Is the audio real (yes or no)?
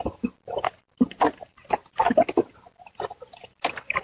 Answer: yes